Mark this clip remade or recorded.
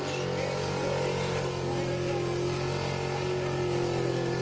recorded